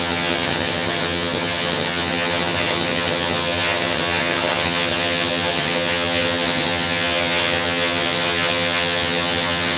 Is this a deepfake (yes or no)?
yes